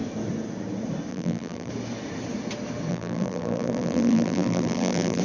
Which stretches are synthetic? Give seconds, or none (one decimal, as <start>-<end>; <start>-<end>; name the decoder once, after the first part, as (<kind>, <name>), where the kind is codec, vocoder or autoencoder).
1.1-1.7 (vocoder, BigVGAN v2); 2.9-5.2